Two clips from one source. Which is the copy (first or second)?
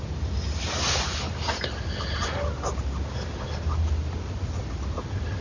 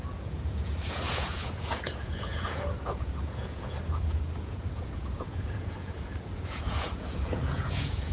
second